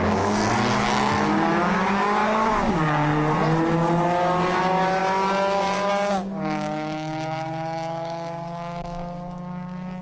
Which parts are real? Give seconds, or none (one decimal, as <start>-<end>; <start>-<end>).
0.4-1.6; 3.1-4.6